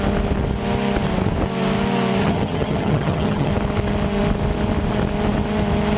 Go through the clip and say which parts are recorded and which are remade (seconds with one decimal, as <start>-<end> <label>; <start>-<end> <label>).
0.0-2.2 recorded; 2.2-3.5 remade; 3.5-6.0 recorded